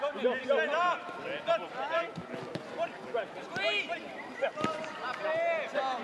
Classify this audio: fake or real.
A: real